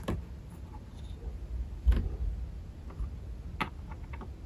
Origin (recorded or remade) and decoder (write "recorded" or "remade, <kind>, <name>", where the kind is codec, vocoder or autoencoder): recorded